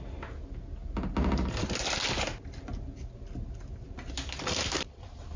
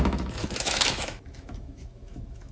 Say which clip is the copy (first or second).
second